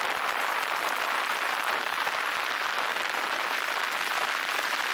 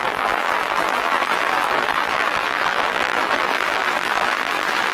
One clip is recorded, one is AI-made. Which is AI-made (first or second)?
second